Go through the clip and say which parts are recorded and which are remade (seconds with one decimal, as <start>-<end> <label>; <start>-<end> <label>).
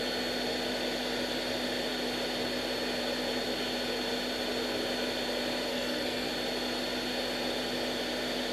0.0-5.7 recorded; 5.7-6.3 remade; 6.3-8.5 recorded